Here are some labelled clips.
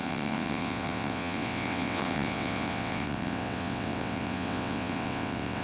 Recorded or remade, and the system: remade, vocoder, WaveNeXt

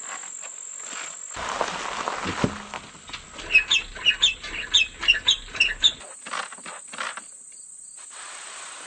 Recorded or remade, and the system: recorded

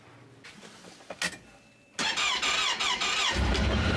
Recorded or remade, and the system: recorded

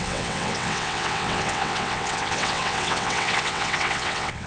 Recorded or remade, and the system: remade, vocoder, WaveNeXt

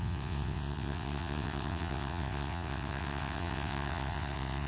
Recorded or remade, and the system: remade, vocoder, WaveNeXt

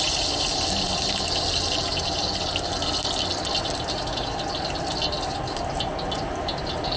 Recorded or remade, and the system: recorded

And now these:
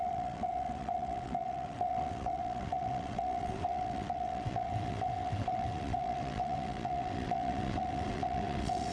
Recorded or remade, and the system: remade, vocoder, WaveNeXt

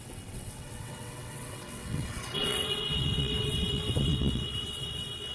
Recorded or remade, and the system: remade, vocoder, WaveNeXt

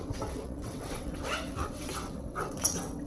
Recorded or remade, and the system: remade, vocoder, WaveNeXt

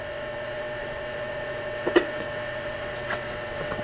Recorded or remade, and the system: remade, vocoder, WaveNeXt